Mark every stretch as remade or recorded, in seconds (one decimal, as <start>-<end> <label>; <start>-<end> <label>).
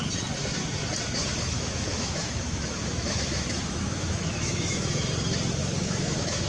0.0-1.2 recorded; 1.2-5.1 remade; 5.1-5.6 recorded; 5.6-6.5 remade